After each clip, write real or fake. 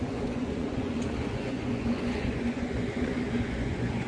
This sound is fake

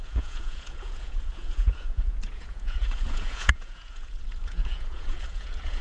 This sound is fake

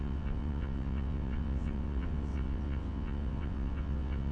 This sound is fake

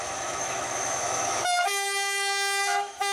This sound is fake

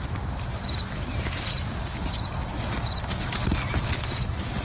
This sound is real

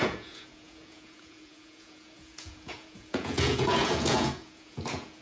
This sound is fake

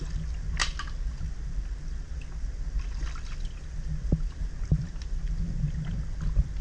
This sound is real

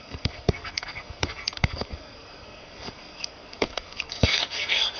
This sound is fake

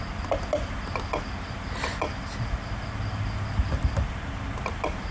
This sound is real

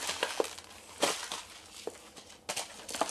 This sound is real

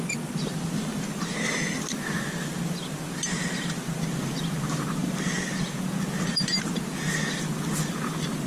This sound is real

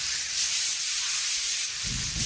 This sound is real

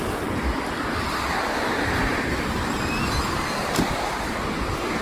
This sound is real